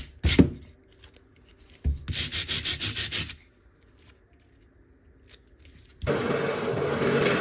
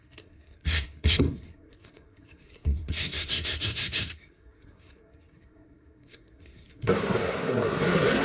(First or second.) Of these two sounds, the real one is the first